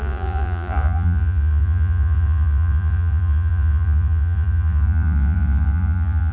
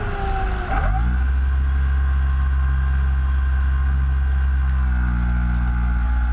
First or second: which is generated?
first